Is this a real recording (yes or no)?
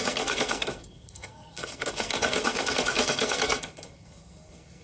no